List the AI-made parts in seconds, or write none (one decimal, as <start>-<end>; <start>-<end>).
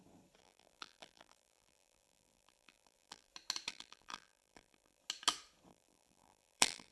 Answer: 0.4-3.3; 3.7-5.0; 5.7-6.9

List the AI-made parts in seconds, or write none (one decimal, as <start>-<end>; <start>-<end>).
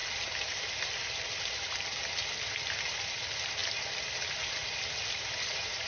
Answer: none